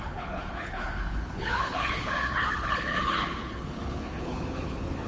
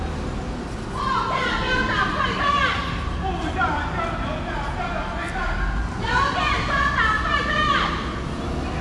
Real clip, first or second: second